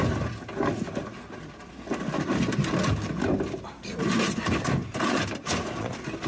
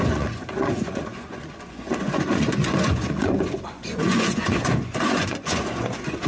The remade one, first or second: second